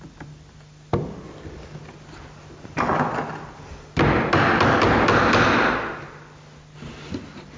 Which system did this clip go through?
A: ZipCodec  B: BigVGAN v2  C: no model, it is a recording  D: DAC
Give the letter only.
C